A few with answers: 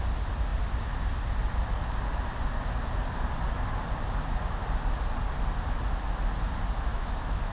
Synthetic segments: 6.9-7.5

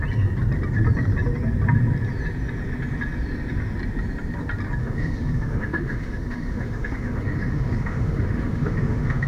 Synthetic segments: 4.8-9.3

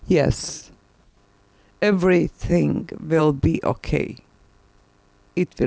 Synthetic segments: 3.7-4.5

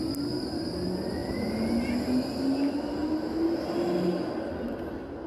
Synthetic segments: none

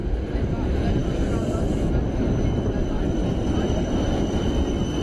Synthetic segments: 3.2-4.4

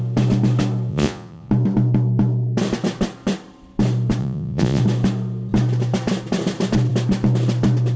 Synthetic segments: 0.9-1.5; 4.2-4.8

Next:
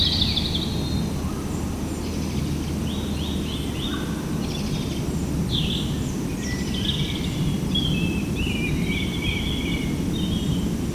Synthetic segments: none